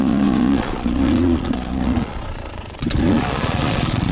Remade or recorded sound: remade